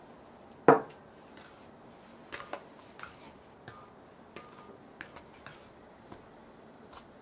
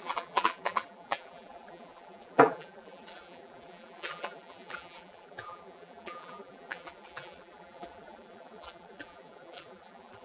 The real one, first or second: first